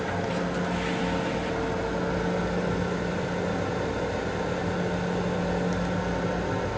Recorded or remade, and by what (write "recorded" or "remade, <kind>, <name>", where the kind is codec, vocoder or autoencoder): recorded